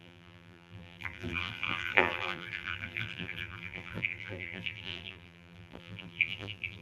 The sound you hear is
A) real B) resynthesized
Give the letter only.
B